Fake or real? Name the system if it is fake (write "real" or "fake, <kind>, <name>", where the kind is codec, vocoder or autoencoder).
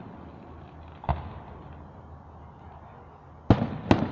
real